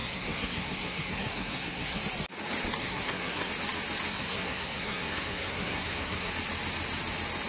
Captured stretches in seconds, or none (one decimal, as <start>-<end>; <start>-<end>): 2.0-2.8; 3.5-4.1; 6.3-7.5